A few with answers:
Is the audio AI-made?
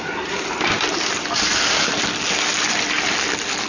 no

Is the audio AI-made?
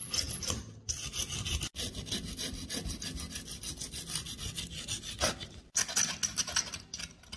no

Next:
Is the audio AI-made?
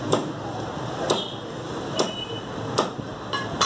no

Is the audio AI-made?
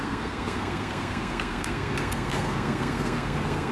yes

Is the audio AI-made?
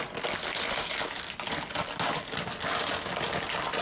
no